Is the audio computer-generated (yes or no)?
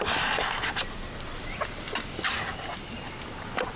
no